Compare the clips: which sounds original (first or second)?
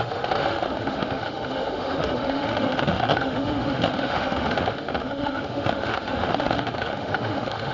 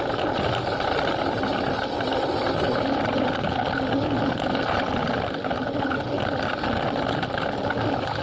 second